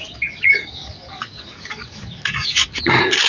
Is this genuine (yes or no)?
no